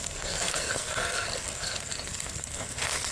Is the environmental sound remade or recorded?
remade